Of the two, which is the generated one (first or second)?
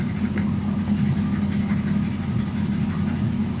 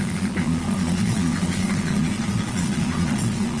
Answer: second